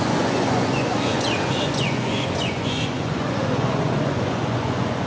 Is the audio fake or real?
fake